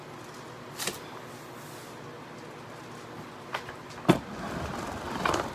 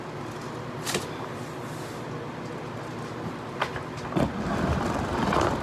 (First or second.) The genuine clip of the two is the first